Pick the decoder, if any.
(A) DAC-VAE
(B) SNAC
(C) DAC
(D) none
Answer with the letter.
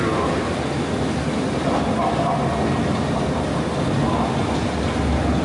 D